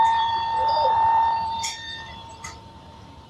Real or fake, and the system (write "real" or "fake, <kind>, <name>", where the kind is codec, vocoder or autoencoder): fake, vocoder, BigVGAN v2